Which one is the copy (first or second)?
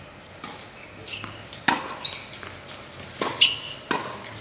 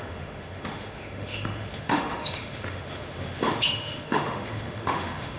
second